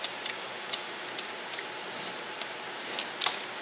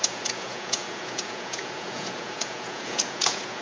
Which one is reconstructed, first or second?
second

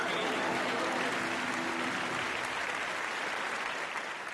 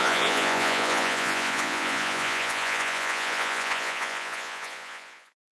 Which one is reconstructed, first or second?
second